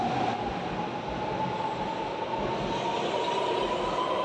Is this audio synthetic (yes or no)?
no